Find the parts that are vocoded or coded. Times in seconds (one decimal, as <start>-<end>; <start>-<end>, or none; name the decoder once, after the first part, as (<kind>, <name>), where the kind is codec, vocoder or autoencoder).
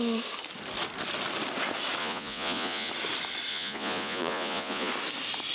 2.0-2.9 (vocoder, Vocos); 3.5-4.9